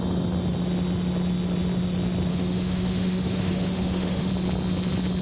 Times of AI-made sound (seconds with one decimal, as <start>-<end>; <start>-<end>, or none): 2.3-4.3